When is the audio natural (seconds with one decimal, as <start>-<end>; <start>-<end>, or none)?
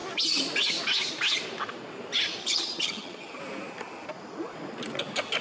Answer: 0.0-2.4; 3.4-5.4